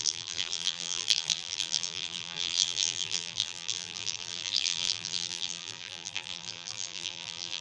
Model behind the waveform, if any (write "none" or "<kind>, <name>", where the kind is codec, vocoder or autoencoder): vocoder, BigVGAN v2